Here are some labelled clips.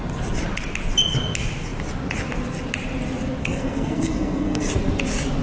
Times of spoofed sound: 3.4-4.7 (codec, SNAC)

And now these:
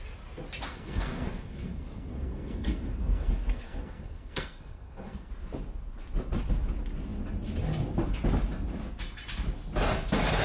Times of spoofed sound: 0.7-5.3 (codec, SNAC)

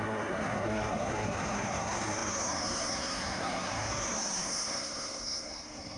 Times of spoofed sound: 0.0-6.0 (codec, SNAC)